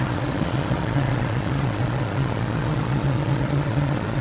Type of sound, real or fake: fake